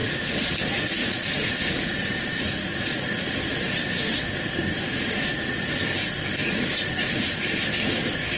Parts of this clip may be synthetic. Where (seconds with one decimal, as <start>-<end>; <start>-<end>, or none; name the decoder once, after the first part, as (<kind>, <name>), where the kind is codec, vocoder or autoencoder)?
0.0-0.5 (vocoder, Vocos); 1.0-3.7; 4.8-5.7; 6.4-7.5

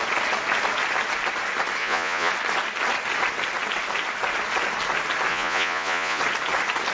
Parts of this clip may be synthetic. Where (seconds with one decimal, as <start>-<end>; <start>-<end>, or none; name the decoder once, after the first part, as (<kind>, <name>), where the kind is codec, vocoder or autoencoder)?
1.8-2.3 (vocoder, Vocos); 5.3-6.2